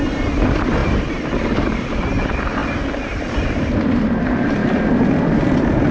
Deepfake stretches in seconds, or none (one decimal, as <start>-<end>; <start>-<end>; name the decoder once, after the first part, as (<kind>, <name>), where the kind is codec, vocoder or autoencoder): 0.0-2.6 (vocoder, BigVGAN v2); 3.2-5.9